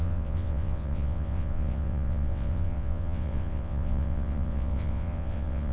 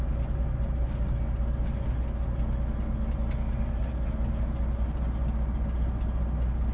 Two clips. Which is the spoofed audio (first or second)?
first